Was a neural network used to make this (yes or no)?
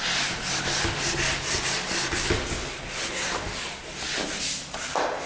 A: no